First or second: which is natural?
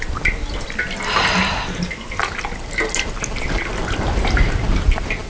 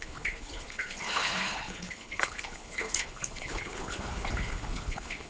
first